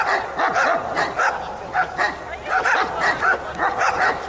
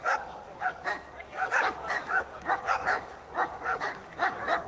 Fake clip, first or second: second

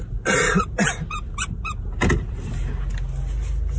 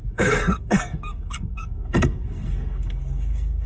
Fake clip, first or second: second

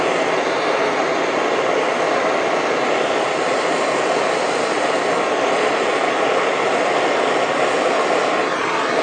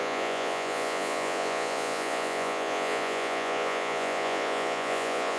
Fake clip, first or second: second